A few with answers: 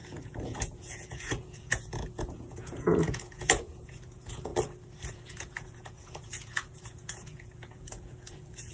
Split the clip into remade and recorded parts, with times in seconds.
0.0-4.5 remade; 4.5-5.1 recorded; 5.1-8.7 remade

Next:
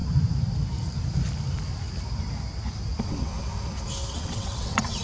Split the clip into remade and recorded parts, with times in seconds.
0.0-3.0 recorded; 3.0-3.5 remade; 3.5-4.1 recorded; 4.1-5.0 remade

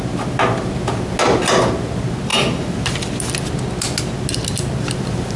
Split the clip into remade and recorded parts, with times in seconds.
0.0-5.4 recorded

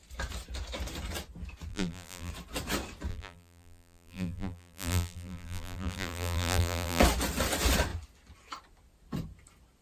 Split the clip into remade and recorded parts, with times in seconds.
0.0-1.7 recorded; 1.7-2.3 remade; 2.3-3.1 recorded; 3.1-7.0 remade; 7.0-9.8 recorded

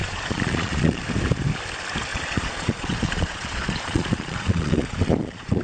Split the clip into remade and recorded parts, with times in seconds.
0.0-1.0 remade; 1.0-2.1 recorded; 2.1-5.6 remade

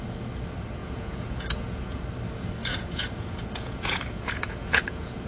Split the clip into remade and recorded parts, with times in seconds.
0.0-0.8 recorded; 0.8-2.0 remade; 2.0-2.6 recorded; 2.6-5.3 remade

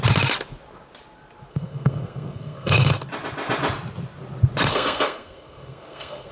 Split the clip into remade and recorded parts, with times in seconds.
0.0-1.5 recorded; 1.5-2.9 remade; 2.9-4.7 recorded; 4.7-6.3 remade